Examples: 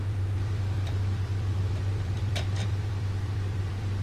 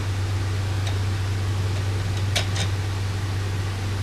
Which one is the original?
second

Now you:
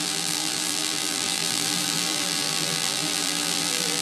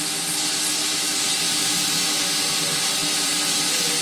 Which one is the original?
second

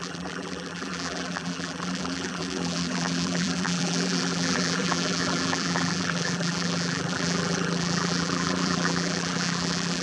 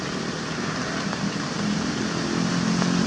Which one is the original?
second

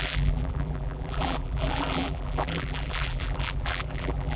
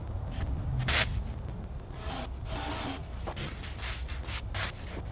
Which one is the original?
second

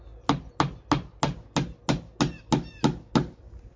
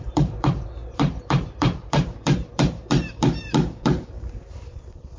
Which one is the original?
first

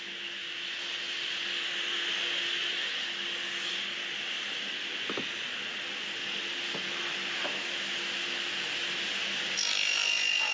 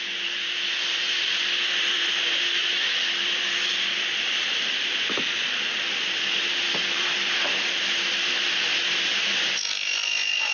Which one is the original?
first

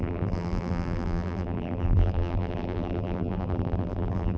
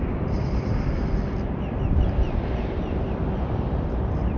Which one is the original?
second